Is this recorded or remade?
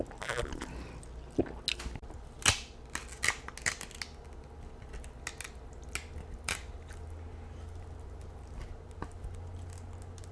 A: recorded